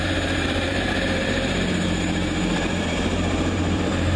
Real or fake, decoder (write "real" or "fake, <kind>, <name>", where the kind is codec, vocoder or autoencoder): fake, vocoder, BigVGAN v2